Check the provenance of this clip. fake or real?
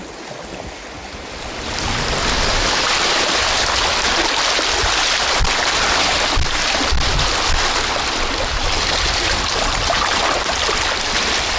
real